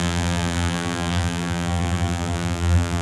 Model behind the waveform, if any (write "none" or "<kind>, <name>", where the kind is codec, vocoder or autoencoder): vocoder, BigVGAN v2